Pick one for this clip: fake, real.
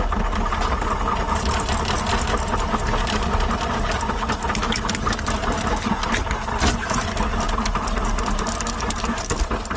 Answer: real